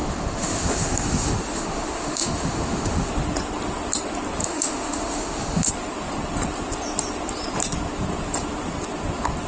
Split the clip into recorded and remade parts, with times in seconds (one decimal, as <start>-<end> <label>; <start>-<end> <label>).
0.0-3.1 remade; 3.1-4.4 recorded; 4.4-5.7 remade; 5.7-9.5 recorded